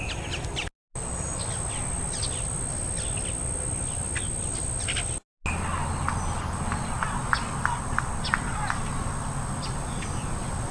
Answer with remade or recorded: recorded